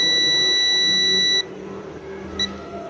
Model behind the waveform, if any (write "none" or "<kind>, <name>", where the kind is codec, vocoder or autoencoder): none